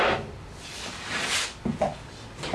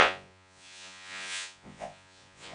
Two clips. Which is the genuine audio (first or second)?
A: first